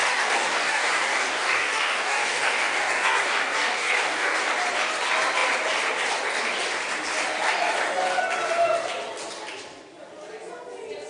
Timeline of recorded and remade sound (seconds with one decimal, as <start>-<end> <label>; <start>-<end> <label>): 0.0-4.4 remade; 4.4-11.1 recorded